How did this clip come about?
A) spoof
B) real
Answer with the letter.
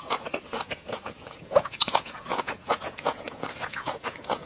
A